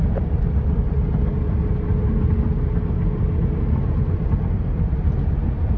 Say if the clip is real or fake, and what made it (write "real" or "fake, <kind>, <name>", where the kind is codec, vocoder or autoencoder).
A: real